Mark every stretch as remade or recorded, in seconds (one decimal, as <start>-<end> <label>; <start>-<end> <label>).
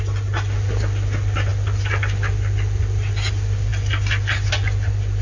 0.0-5.2 recorded